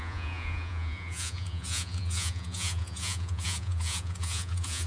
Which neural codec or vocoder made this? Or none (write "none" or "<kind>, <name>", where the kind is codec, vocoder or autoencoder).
vocoder, Vocos